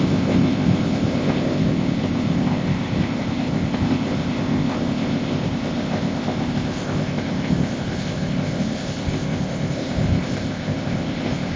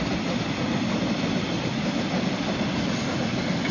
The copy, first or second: first